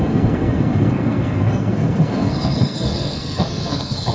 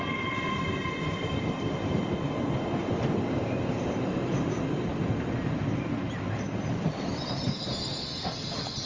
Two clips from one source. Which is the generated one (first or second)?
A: first